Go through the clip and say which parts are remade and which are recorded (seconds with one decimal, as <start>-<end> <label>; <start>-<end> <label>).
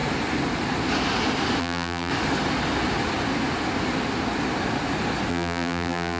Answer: 0.0-1.6 recorded; 1.6-2.1 remade; 2.1-5.3 recorded; 5.3-6.2 remade